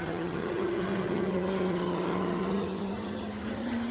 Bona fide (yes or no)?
no